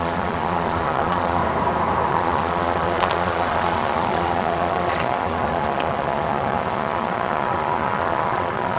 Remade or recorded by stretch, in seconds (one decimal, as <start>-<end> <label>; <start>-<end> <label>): 0.0-1.4 remade; 1.4-2.1 recorded; 2.1-8.8 remade